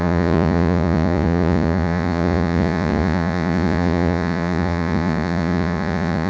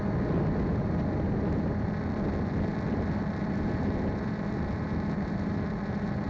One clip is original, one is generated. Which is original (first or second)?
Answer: second